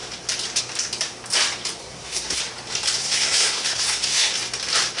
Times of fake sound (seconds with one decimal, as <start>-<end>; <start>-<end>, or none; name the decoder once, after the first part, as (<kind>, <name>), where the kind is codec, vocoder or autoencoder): 1.8-2.4 (codec, SNAC); 3.0-4.3